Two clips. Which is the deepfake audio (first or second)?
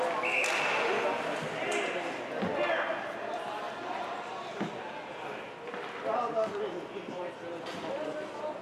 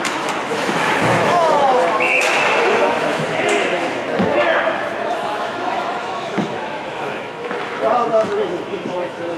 second